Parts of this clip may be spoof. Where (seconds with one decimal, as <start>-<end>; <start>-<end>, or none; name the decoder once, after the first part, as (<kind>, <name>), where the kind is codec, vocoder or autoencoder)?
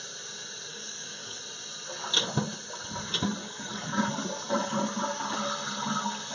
0.7-1.4 (codec, DAC); 3.4-4.1